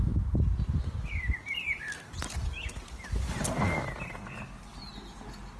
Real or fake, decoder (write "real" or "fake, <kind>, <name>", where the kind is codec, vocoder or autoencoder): real